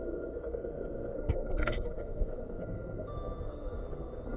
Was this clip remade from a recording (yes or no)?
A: yes